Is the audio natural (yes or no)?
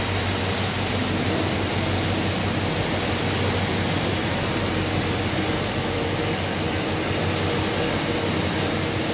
yes